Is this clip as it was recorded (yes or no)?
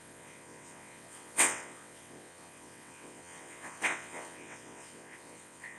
no